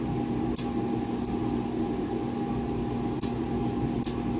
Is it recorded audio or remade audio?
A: recorded